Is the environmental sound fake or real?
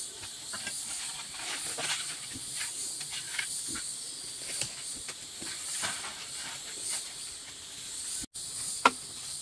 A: real